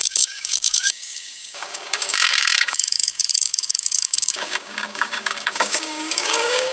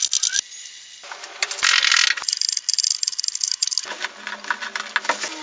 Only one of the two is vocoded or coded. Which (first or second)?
first